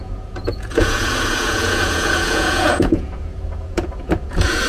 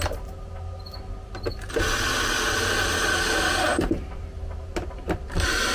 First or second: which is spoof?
first